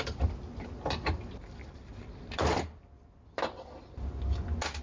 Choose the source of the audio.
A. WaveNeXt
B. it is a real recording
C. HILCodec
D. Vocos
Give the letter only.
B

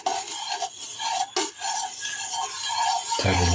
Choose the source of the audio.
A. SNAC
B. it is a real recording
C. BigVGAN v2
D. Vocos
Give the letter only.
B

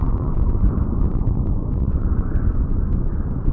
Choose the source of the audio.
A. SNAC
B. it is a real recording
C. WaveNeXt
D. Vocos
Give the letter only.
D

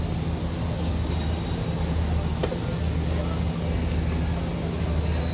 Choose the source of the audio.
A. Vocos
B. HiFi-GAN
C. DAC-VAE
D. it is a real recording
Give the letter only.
D